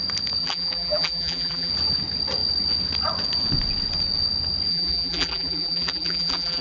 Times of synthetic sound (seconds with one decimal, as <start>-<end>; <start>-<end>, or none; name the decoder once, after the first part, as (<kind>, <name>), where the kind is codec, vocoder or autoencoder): 0.4-1.7 (vocoder, BigVGAN v2); 4.7-6.6